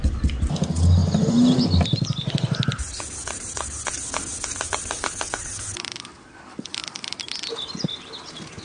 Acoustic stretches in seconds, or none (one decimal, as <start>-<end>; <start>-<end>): 0.0-8.6